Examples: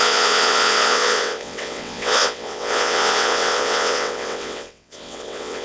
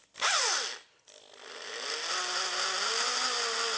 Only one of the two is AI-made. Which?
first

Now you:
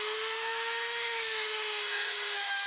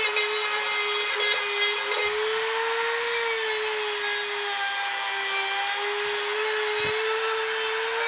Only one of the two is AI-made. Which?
first